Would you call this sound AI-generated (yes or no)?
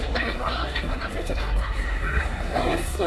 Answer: yes